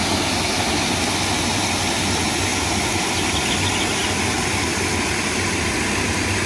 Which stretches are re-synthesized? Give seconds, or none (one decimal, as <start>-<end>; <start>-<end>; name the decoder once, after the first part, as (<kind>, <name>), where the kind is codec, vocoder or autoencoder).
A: none